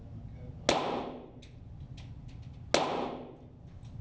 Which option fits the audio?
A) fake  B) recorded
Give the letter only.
B